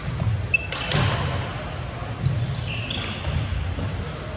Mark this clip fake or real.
real